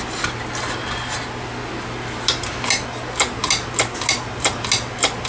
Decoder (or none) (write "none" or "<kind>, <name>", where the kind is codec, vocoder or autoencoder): none